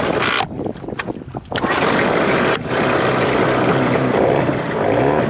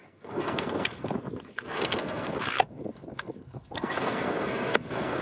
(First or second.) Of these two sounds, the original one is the first